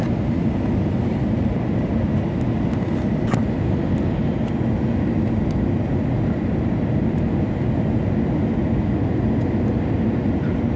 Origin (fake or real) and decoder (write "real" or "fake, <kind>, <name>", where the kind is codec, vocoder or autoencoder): real